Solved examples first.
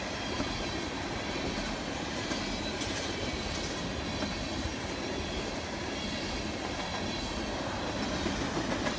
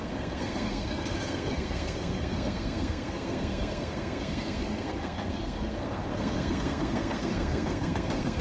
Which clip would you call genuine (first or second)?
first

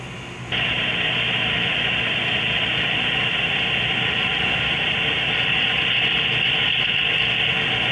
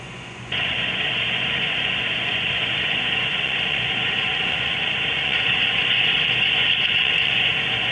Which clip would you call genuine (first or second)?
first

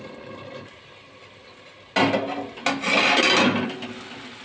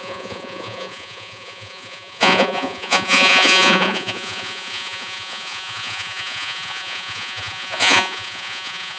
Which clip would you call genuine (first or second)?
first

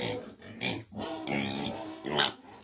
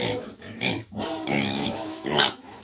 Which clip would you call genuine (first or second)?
first